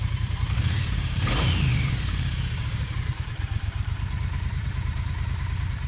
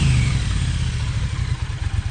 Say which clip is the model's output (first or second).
first